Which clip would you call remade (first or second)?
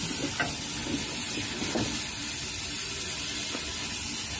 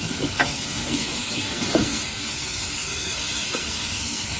second